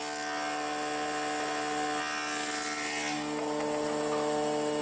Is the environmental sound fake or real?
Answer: real